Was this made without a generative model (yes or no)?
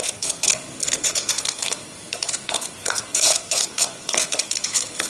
no